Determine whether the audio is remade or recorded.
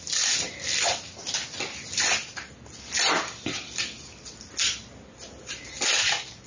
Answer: recorded